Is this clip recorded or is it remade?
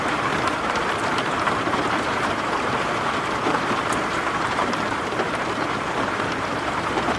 remade